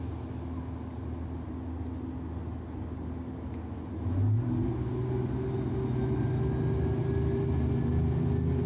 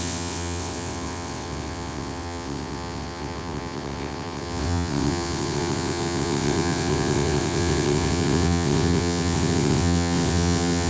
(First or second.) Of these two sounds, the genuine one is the first